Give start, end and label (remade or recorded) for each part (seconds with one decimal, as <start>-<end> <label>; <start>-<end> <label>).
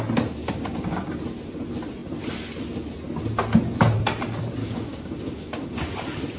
0.0-0.4 recorded; 0.4-1.0 remade; 1.0-4.6 recorded; 4.6-5.9 remade; 5.9-6.4 recorded